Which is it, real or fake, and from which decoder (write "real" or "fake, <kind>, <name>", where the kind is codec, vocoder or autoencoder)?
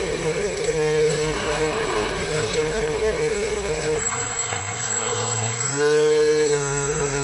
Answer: fake, codec, SNAC